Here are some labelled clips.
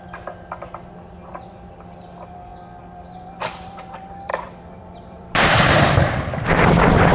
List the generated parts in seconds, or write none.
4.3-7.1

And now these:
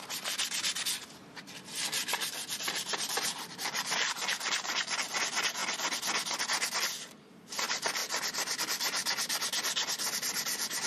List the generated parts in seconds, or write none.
0.0-5.6; 6.8-8.0; 8.6-9.0; 10.1-10.9